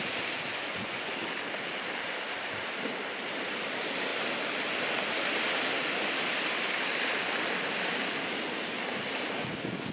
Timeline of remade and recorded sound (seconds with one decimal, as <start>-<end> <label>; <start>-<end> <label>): 0.0-0.5 recorded; 0.5-1.1 remade; 1.1-9.9 recorded

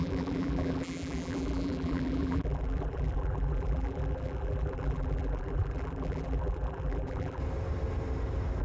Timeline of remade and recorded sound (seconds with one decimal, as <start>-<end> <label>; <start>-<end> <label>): 0.0-7.4 remade; 7.4-8.6 recorded

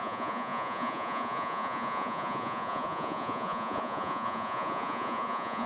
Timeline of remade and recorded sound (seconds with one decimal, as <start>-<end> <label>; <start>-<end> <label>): 0.0-5.7 remade